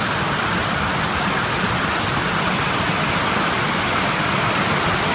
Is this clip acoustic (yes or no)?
yes